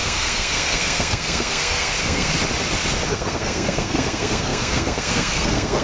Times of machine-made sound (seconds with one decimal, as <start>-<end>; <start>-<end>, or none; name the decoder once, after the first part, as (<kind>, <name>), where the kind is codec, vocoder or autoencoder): 0.0-2.3 (codec, SNAC); 3.1-5.8